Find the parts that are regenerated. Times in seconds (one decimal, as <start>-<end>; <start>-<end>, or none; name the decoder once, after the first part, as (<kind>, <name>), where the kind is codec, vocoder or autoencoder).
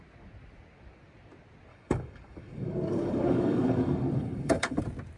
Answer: 1.7-4.8 (codec, DAC)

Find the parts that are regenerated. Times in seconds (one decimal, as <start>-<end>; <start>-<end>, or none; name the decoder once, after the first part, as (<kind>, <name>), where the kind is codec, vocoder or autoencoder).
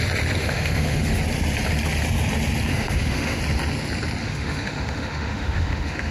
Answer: 0.4-1.2 (autoencoder, DAC-VAE); 2.7-3.4; 4.2-6.1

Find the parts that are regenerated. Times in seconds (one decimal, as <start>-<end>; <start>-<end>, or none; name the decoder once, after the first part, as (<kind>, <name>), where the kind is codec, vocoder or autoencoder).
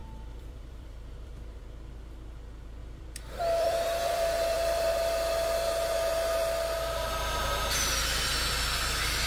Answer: 0.0-1.6 (vocoder, BigVGAN v2); 2.8-4.9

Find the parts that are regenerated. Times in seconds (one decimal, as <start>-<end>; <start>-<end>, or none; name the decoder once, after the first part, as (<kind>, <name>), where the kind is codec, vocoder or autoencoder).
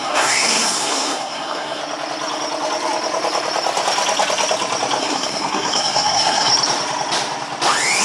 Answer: 0.0-1.8 (codec, SNAC); 5.0-6.5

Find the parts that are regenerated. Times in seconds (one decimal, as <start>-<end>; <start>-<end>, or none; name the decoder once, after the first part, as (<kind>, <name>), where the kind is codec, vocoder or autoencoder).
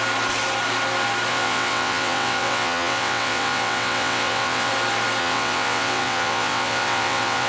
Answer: 1.3-4.7 (vocoder, WaveNeXt); 5.2-7.5